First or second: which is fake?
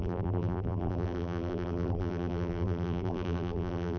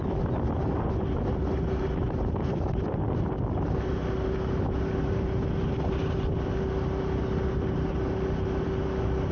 first